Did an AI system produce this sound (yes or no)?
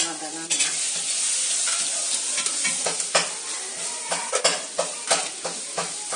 no